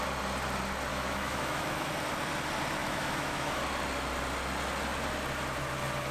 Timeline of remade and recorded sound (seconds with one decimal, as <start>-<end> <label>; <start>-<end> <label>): 0.0-0.9 recorded; 0.9-1.9 remade; 1.9-2.8 recorded; 2.8-3.6 remade; 3.6-6.1 recorded